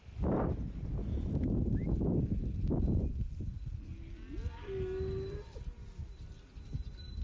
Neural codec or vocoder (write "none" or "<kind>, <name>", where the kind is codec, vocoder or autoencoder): none